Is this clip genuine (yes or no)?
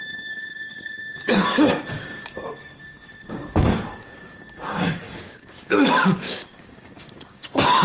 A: no